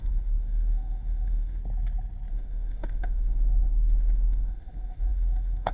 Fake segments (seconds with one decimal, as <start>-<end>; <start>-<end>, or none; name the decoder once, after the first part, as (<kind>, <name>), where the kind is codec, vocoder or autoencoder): 0.0-1.6 (autoencoder, DAC-VAE); 2.3-5.7